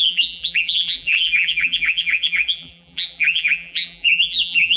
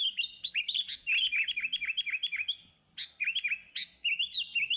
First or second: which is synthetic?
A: first